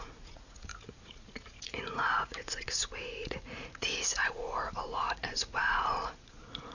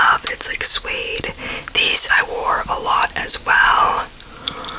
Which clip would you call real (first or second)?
second